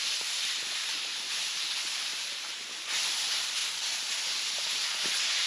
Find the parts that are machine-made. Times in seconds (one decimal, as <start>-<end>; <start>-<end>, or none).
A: 0.8-1.7; 2.1-2.7